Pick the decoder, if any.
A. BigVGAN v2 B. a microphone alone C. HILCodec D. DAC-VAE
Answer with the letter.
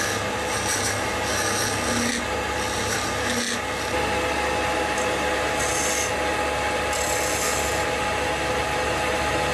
B